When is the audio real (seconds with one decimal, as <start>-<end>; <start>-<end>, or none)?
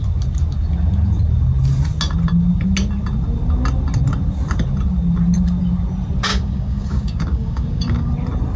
0.0-6.3; 8.1-8.6